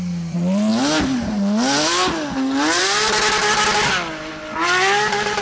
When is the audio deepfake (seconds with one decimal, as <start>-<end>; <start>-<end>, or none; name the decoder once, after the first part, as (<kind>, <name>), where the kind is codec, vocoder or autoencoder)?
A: none